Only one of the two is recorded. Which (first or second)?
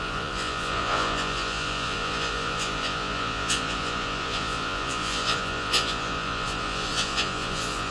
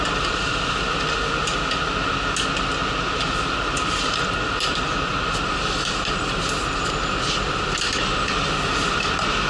second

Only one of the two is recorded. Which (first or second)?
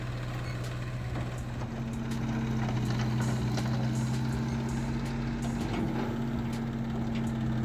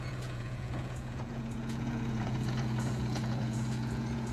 first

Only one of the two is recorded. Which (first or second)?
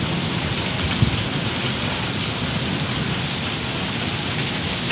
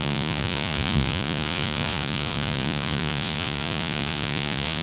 first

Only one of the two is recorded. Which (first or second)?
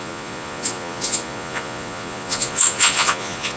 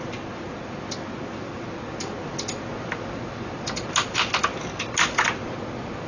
second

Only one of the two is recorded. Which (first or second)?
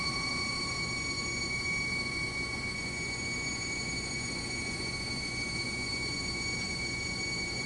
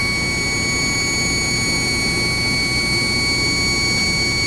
second